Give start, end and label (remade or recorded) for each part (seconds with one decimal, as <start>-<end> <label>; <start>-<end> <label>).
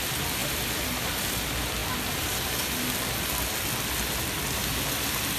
0.0-5.4 recorded